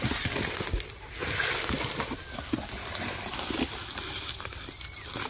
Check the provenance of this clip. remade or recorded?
recorded